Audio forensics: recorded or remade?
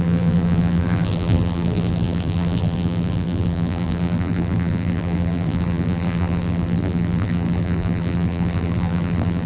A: remade